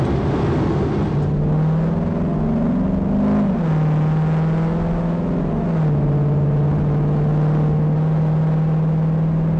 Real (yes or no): yes